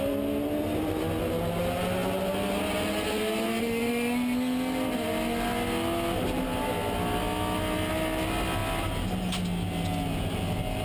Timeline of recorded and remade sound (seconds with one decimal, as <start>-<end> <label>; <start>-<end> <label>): 0.0-10.8 recorded